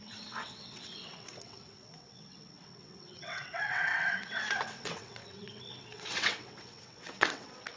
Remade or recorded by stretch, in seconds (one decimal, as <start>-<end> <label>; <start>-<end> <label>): 0.0-7.8 remade